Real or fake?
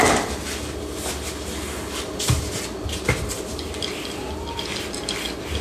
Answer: real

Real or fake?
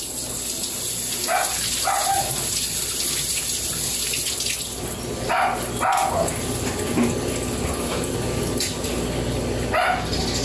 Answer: real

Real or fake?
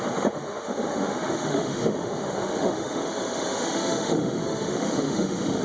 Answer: fake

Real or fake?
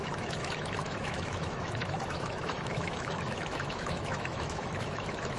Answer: fake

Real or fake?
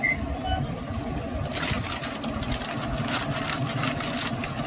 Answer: real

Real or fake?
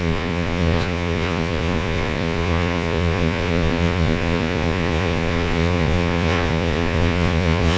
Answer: fake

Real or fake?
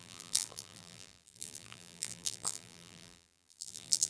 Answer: fake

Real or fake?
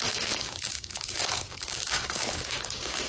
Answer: fake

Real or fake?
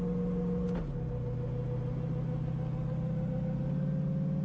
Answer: real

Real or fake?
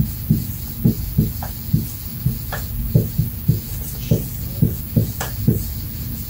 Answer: fake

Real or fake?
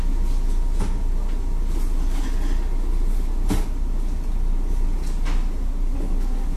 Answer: real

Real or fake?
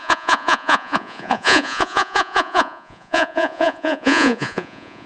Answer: fake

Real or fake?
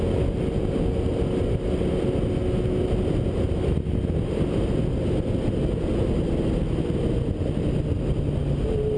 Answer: real